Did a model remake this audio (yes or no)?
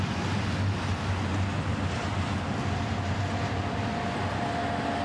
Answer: no